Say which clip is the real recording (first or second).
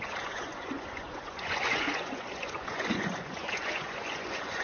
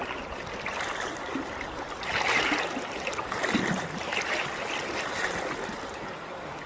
second